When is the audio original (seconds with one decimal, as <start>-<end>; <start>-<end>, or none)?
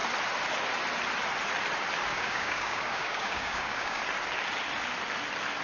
0.0-2.1; 4.0-5.6